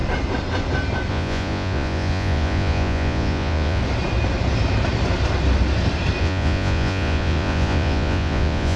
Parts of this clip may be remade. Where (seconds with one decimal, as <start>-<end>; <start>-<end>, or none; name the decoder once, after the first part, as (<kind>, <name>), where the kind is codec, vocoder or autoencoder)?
1.1-3.8 (vocoder, Vocos); 6.2-8.8